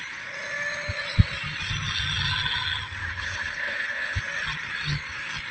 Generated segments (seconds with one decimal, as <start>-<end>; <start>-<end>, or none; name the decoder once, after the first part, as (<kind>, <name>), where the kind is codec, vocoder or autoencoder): 3.1-4.2 (codec, HILCodec)